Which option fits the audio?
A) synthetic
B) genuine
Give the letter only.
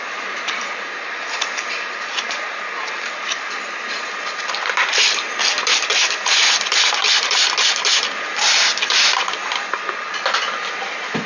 B